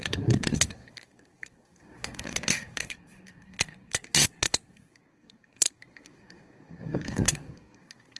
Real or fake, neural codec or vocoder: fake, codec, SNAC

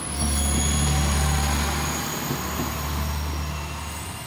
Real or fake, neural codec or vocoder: real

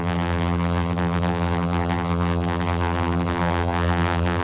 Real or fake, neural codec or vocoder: fake, vocoder, BigVGAN v2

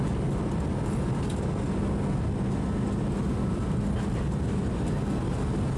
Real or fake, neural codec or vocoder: real